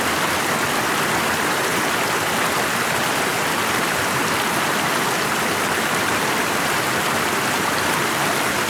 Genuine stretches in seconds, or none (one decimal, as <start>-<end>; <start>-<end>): 0.0-8.7